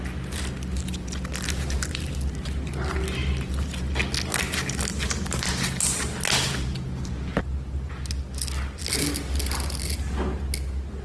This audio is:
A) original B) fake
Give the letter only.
A